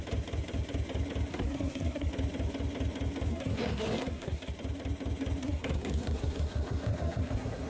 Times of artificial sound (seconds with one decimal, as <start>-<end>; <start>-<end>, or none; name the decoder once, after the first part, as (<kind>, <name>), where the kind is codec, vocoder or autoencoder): 1.3-2.1 (codec, SNAC); 3.3-4.5; 5.4-7.7